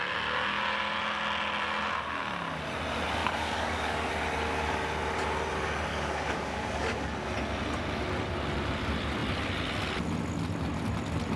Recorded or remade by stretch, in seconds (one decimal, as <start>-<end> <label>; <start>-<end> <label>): 0.0-3.2 recorded; 3.2-4.1 remade; 4.1-5.9 recorded; 5.9-7.3 remade; 7.3-11.4 recorded

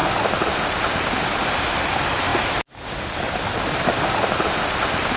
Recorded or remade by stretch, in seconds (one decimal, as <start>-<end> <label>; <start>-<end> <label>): 0.0-5.2 recorded

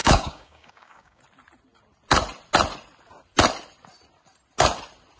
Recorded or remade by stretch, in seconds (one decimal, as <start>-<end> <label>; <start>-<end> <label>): 0.0-1.2 remade; 1.2-5.2 recorded

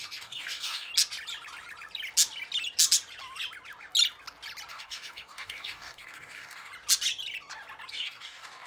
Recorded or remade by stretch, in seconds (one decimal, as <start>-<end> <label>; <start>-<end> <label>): 0.0-0.9 remade; 0.9-4.7 recorded; 4.7-6.7 remade; 6.7-7.9 recorded; 7.9-8.7 remade

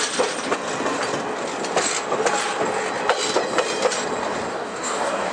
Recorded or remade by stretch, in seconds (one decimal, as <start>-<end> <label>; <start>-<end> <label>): 0.0-4.5 recorded; 4.5-5.3 remade

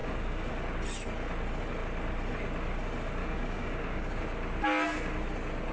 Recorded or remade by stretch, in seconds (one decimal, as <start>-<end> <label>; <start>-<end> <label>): 0.0-0.5 remade; 0.5-3.2 recorded; 3.2-4.2 remade; 4.2-5.7 recorded

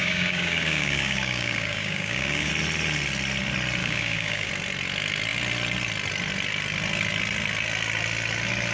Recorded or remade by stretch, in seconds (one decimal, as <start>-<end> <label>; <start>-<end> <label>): 0.0-2.5 remade; 2.5-3.8 recorded; 3.8-4.5 remade; 4.5-8.7 recorded